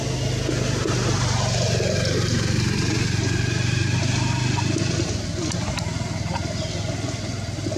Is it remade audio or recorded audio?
recorded